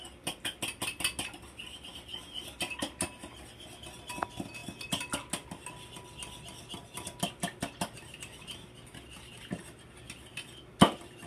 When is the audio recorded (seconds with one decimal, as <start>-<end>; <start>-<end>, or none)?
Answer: 0.0-11.3